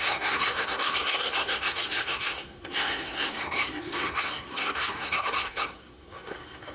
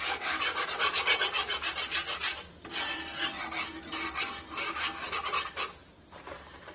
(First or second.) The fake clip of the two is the first